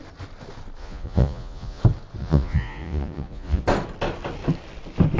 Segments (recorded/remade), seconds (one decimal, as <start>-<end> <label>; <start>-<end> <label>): 0.0-0.8 recorded; 0.8-1.8 remade; 1.8-2.2 recorded; 2.2-3.6 remade; 3.6-5.2 recorded